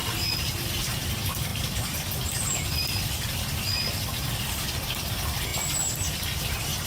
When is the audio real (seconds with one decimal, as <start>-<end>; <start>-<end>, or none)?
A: 0.0-0.7; 5.5-6.1